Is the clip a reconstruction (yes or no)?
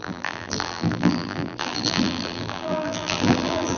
yes